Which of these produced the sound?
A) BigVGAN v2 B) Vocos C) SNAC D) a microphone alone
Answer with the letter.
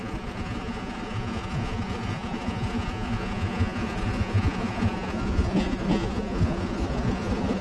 B